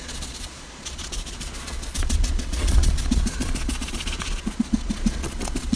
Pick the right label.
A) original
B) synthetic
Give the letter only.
B